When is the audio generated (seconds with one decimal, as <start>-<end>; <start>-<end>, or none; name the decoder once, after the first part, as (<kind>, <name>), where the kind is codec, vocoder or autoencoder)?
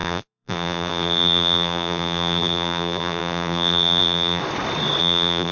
0.0-4.4 (vocoder, BigVGAN v2); 5.0-5.5